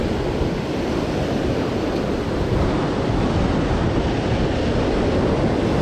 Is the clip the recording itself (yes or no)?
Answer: yes